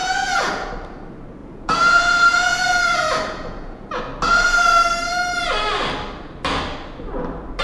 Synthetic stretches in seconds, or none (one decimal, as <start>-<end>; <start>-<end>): 0.0-0.7; 1.4-4.0